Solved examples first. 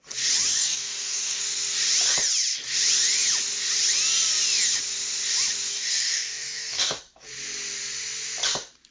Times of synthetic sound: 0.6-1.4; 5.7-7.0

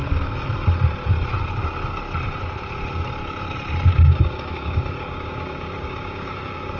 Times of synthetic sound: 3.9-6.8

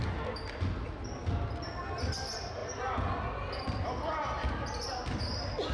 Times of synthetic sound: none

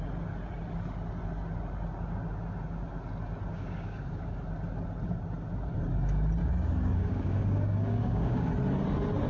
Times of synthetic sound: 3.5-4.2; 6.4-8.5